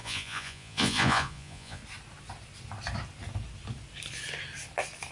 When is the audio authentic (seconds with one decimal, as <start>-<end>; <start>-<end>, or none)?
1.8-5.1